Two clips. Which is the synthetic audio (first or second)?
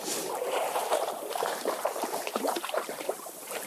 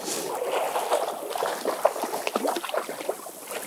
first